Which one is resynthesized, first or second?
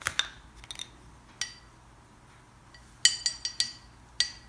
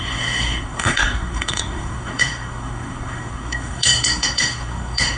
second